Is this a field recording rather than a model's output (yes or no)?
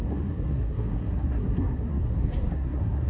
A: no